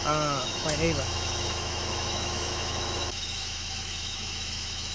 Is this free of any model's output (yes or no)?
no